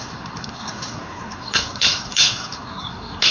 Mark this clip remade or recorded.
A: remade